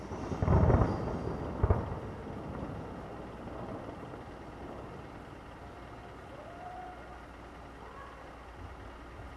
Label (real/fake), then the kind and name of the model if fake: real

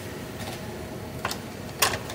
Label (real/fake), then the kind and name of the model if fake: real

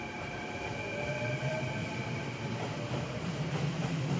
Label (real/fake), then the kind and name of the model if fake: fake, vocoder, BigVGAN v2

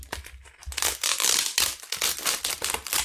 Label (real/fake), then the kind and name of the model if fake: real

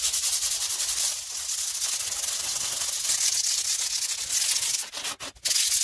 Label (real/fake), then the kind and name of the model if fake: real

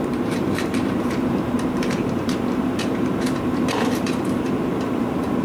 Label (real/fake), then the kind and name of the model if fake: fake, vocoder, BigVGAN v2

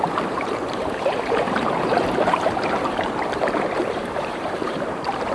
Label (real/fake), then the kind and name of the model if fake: fake, vocoder, BigVGAN v2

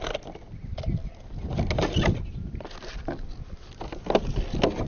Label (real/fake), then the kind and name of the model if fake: real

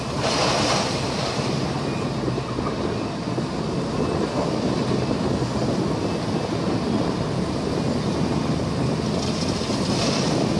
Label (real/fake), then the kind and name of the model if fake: real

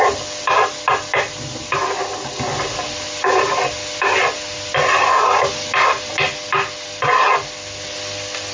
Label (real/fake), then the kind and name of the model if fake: real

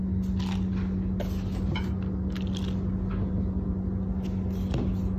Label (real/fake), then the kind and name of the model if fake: real